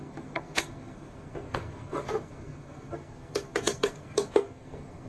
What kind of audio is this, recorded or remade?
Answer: remade